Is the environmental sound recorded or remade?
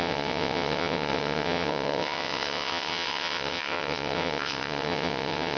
remade